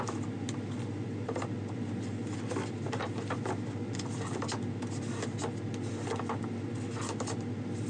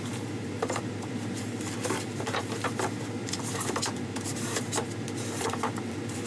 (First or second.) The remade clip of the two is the second